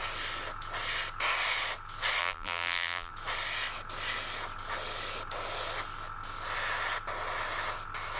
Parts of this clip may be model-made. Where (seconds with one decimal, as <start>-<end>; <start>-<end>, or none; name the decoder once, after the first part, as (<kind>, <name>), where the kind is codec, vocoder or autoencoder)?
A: 2.2-3.1 (vocoder, BigVGAN v2)